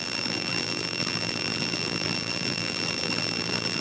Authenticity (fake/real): fake